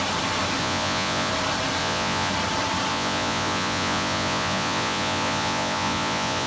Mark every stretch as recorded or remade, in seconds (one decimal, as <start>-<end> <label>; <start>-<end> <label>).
0.0-0.6 recorded; 0.6-1.3 remade; 1.3-1.8 recorded; 1.8-2.3 remade; 2.3-2.9 recorded; 2.9-6.5 remade